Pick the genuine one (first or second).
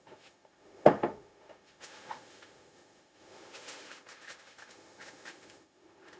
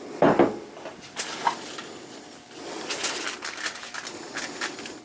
second